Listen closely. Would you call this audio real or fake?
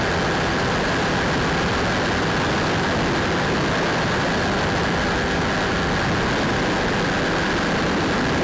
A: real